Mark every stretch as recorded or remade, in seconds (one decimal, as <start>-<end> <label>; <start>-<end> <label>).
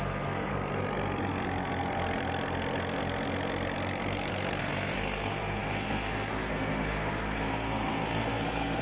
0.0-0.5 remade; 0.5-4.6 recorded; 4.6-8.8 remade